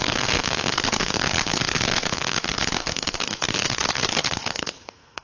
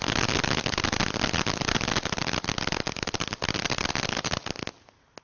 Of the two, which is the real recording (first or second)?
second